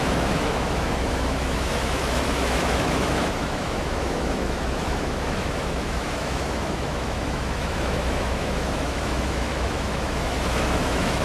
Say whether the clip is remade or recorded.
remade